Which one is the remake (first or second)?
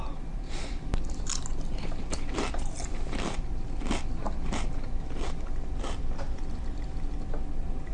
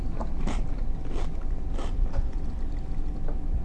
second